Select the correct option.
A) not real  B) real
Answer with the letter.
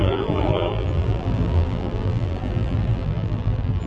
A